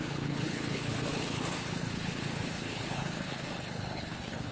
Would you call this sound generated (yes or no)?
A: yes